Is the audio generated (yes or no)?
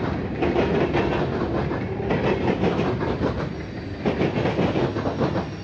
no